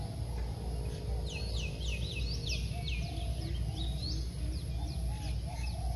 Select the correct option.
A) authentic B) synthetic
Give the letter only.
A